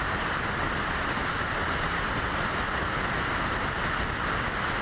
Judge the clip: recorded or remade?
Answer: recorded